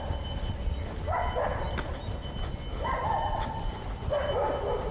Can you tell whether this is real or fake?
real